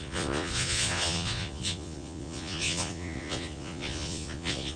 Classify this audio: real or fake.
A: fake